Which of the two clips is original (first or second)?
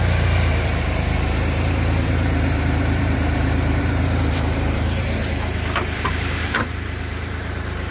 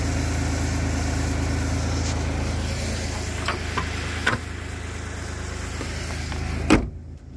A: second